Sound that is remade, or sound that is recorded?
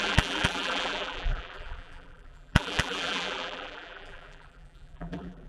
remade